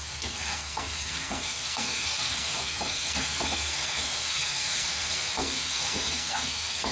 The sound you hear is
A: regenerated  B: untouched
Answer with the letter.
A